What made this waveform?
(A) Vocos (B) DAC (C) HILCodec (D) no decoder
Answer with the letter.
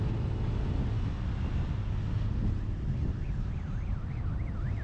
D